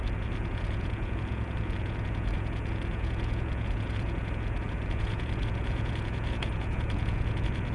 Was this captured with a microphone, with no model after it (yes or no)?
no